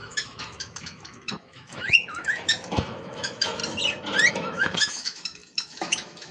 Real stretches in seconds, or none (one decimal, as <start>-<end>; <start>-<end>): 3.6-4.3